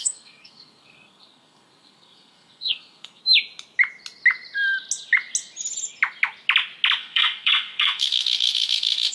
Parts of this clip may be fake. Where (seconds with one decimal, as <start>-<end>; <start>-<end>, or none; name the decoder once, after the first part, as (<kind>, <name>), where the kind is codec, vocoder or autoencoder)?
0.0-3.2 (codec, SNAC); 7.0-9.1